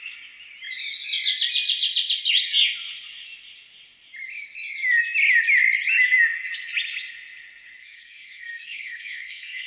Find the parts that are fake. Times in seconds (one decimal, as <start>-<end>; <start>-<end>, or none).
7.8-9.7

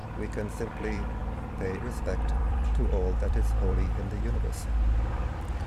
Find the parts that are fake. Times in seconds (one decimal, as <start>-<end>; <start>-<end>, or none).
0.6-5.7

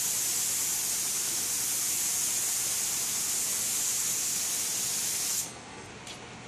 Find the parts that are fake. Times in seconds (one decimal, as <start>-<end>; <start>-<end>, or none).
5.3-5.9

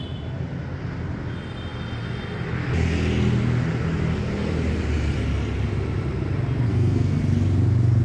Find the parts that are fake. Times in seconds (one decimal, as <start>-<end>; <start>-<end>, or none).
6.7-7.2

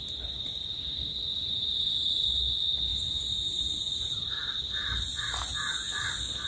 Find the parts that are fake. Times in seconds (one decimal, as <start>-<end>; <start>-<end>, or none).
1.3-1.9; 2.9-3.6